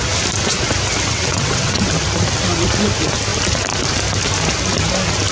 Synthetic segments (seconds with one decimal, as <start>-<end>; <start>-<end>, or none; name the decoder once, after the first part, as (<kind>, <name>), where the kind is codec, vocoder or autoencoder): 1.1-1.9 (vocoder, WaveNeXt)